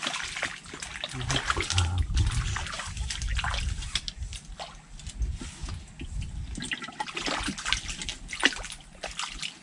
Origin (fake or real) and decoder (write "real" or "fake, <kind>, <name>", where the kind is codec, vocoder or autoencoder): real